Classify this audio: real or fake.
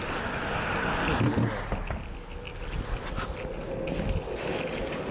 real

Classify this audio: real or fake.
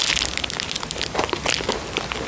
real